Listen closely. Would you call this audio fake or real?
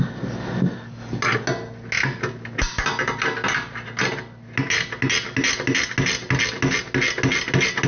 real